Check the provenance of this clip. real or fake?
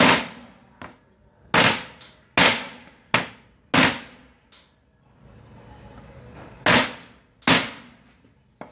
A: real